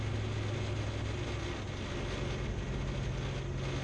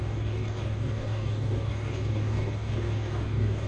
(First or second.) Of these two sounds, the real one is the first